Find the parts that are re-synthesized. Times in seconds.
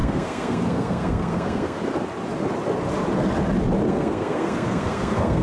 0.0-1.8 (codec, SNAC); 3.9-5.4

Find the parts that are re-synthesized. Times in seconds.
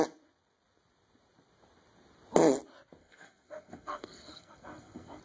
3.0-5.2 (codec, SNAC)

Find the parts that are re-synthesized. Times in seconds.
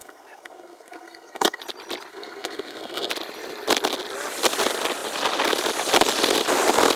0.0-1.6 (codec, SNAC); 2.1-3.1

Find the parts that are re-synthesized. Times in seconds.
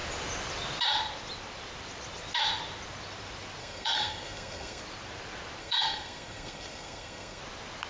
3.6-4.8 (codec, SNAC); 5.6-7.4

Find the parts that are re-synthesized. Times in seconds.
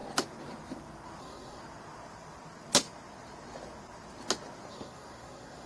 1.2-1.6 (codec, SNAC); 4.7-5.7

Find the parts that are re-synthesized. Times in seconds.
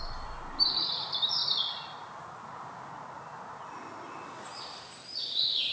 none